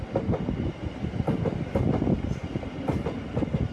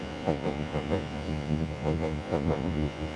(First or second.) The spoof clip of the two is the second